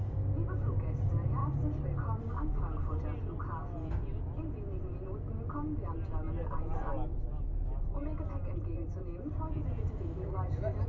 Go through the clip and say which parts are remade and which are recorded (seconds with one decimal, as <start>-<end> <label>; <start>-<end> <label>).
0.0-10.9 recorded